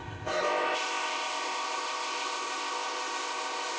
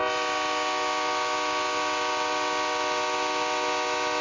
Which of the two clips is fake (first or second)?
first